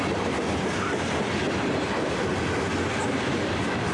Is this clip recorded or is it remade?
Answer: recorded